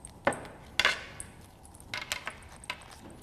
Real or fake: real